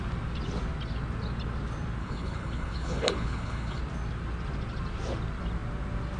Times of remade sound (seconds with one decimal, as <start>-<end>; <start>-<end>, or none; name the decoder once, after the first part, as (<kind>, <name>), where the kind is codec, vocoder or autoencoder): 2.0-3.8 (codec, HILCodec)